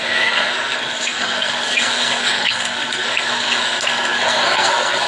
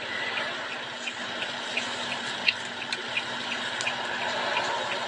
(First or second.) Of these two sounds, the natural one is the second